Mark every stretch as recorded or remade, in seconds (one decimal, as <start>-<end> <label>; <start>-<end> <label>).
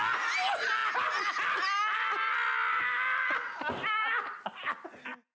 0.0-5.3 recorded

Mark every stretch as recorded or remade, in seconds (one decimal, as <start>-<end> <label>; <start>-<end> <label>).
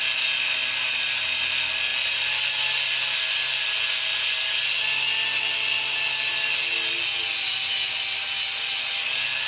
0.0-9.5 recorded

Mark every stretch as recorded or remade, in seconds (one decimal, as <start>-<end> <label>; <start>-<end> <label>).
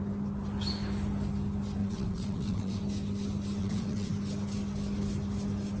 0.0-1.8 recorded; 1.8-2.8 remade; 2.8-3.6 recorded; 3.6-4.1 remade; 4.1-5.8 recorded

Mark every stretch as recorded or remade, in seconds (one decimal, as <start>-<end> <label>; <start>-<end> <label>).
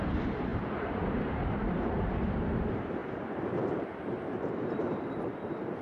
0.0-5.8 remade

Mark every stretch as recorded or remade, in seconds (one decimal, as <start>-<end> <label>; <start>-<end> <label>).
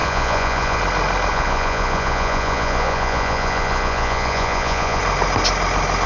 0.0-0.8 remade; 0.8-1.3 recorded; 1.3-5.0 remade; 5.0-6.1 recorded